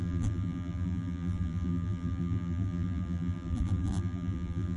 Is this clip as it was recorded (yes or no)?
no